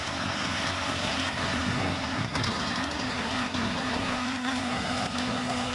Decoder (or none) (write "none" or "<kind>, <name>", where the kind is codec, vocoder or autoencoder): codec, SNAC